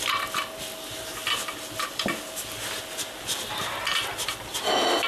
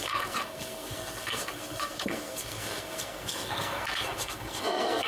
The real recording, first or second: first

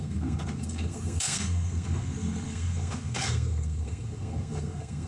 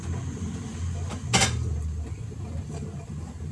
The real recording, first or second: second